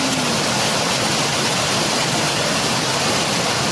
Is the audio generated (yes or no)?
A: no